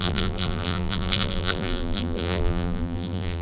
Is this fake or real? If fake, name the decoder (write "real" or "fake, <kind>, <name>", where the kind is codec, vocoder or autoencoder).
fake, vocoder, BigVGAN v2